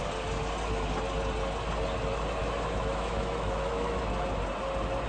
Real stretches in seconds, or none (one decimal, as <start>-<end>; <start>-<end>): 0.0-2.4; 4.0-5.1

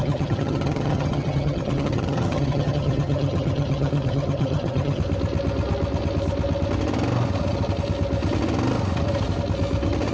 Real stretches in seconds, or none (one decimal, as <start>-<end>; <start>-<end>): 5.0-10.1